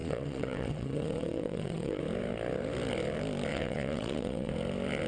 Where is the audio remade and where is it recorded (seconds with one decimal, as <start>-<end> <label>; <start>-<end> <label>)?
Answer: 0.0-2.0 remade; 2.0-3.5 recorded; 3.5-4.5 remade; 4.5-5.1 recorded